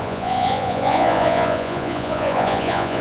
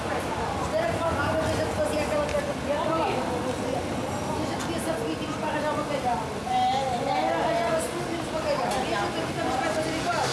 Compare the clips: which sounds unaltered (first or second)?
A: second